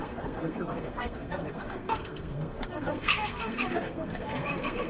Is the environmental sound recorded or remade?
remade